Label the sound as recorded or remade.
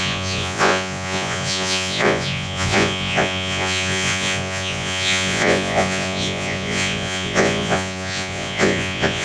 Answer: remade